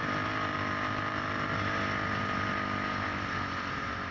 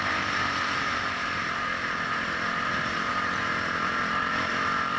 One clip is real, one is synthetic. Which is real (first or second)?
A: first